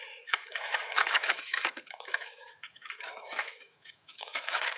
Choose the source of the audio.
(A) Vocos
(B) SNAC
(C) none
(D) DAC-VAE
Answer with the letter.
D